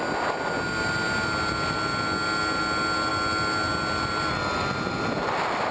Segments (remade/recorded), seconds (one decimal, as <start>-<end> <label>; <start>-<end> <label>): 0.0-5.7 recorded